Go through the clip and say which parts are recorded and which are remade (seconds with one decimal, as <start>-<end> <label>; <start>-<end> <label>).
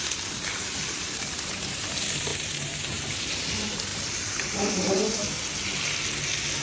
0.0-3.9 remade; 3.9-4.7 recorded; 4.7-5.2 remade; 5.2-6.6 recorded